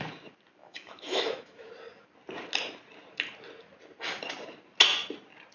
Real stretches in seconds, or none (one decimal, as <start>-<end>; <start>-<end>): 0.0-0.6; 1.7-5.5

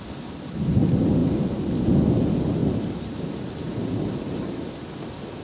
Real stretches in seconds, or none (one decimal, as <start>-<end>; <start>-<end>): 0.0-5.4